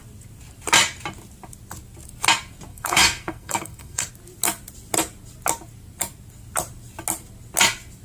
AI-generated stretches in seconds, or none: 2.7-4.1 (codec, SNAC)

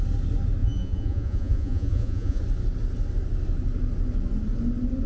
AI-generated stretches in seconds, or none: 0.6-2.4 (vocoder, Vocos)

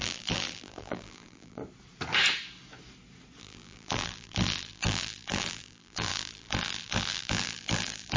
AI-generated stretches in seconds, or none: 0.0-1.6 (vocoder, BigVGAN v2); 3.4-8.2